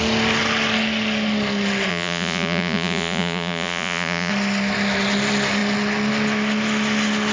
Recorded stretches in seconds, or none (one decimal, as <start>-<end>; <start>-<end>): 0.0-1.9; 4.3-7.3